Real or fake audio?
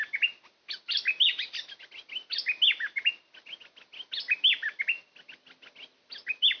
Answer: real